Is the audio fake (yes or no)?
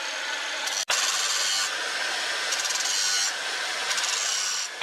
no